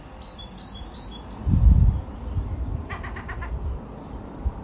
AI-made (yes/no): no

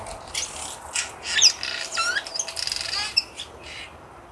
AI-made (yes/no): no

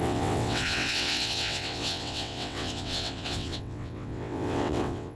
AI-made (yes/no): yes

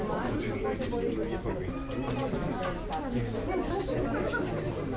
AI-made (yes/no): no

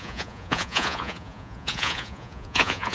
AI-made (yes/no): yes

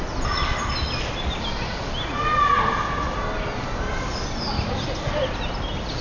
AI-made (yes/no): no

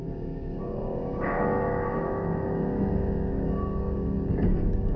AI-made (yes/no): yes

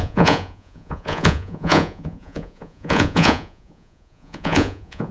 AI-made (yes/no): yes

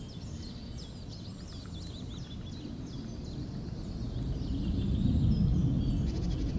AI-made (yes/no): no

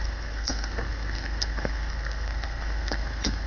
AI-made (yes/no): yes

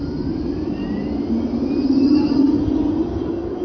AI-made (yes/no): no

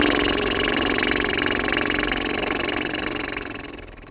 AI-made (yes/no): no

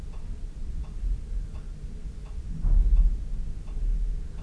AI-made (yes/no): no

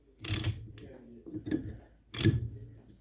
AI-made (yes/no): no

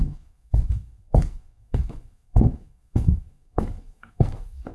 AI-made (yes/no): yes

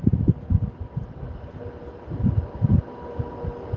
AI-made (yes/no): no